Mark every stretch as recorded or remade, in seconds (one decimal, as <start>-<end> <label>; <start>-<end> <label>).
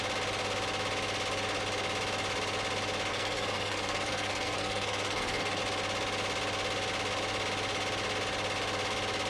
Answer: 0.0-3.1 recorded; 3.1-5.6 remade; 5.6-9.3 recorded